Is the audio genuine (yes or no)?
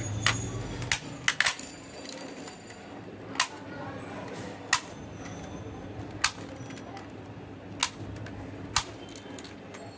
yes